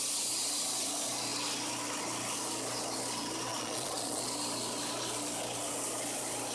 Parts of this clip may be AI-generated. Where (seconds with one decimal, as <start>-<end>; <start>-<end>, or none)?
3.5-4.2